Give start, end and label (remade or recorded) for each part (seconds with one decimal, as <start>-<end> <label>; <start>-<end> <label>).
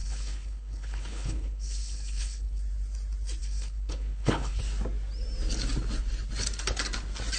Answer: 0.0-2.6 remade; 2.6-3.4 recorded; 3.4-4.6 remade; 4.6-7.4 recorded